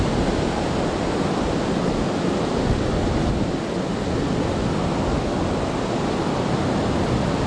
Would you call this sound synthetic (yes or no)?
no